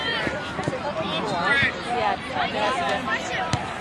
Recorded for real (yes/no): no